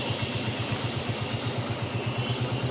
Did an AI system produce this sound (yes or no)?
no